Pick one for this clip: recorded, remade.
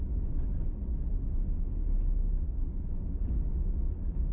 recorded